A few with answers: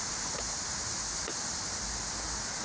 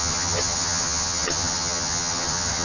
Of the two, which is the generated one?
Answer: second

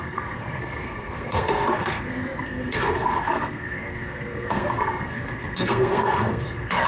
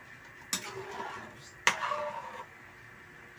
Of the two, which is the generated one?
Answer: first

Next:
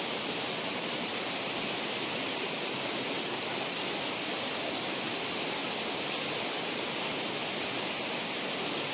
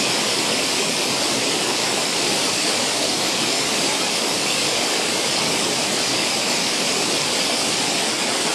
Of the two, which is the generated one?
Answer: second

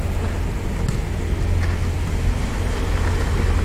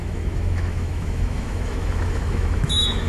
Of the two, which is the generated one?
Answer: second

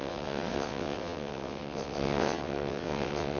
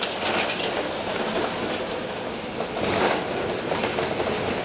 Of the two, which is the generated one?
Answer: first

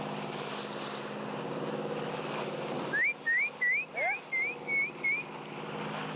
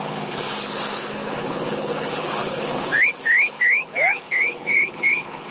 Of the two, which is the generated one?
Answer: second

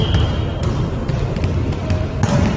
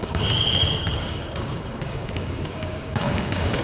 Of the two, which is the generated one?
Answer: second